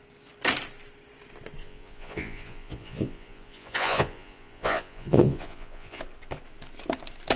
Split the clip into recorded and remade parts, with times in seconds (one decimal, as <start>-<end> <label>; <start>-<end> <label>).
0.0-1.6 recorded; 1.6-6.0 remade; 6.0-7.4 recorded